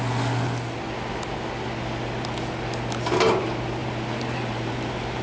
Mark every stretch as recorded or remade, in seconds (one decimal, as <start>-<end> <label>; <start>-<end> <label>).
0.0-3.8 recorded; 3.8-5.2 remade